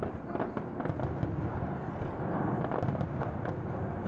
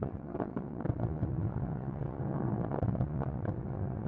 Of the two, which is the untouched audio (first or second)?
first